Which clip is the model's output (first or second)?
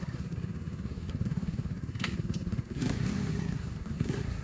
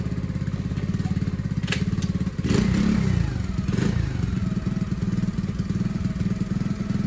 first